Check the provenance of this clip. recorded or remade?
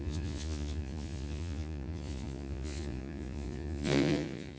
remade